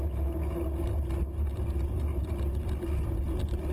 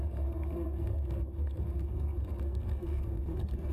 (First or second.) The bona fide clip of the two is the first